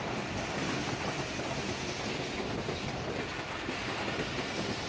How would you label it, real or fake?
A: real